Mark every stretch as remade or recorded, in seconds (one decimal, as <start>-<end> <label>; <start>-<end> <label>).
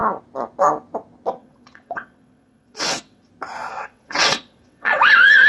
0.0-1.4 recorded; 1.4-3.3 remade; 3.3-3.7 recorded; 3.7-5.5 remade